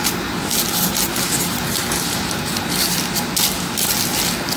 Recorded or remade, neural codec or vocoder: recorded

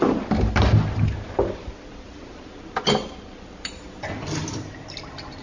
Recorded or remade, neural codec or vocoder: recorded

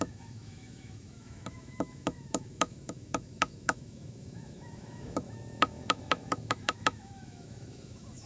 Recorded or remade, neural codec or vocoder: remade, autoencoder, DAC-VAE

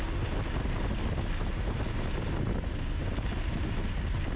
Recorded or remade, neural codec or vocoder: recorded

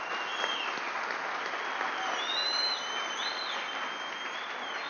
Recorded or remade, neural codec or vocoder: recorded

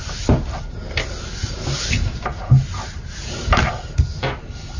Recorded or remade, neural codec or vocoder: recorded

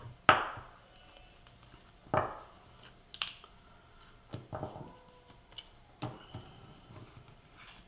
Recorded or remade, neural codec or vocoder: recorded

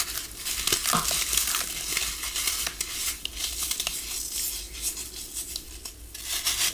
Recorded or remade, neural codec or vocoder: recorded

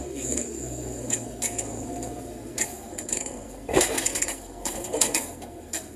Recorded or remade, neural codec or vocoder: remade, codec, SNAC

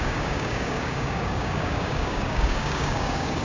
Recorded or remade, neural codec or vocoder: remade, codec, DAC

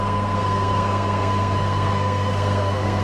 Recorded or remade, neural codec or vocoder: remade, codec, SNAC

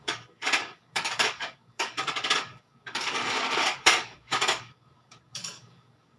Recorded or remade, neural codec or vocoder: remade, codec, DAC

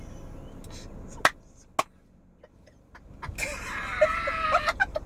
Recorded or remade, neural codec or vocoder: recorded